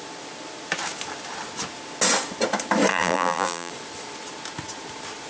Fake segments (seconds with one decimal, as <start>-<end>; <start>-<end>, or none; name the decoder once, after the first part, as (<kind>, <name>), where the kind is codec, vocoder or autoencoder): 2.9-3.7 (vocoder, BigVGAN v2)